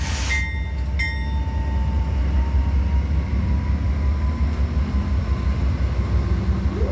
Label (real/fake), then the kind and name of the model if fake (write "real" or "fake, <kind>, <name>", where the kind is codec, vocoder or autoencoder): real